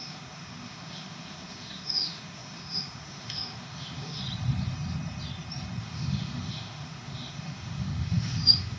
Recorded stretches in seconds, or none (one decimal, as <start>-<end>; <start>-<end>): 4.2-5.8

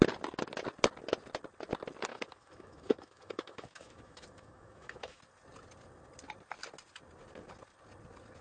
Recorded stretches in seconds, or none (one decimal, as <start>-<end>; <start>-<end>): 0.0-2.1; 5.2-8.4

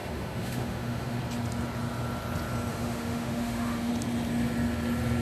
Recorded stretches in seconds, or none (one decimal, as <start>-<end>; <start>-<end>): 1.2-2.7; 3.9-5.2

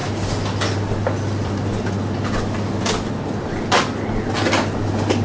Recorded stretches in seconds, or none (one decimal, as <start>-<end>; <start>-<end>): 0.0-5.2

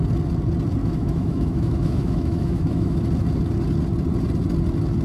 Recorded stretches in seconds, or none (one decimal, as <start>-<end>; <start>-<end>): 0.0-0.8; 3.0-5.0